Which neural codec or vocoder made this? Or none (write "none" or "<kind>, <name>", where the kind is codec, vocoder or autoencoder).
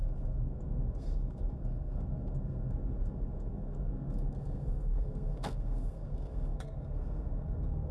codec, SNAC